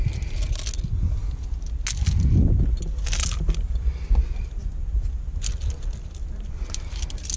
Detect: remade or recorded recorded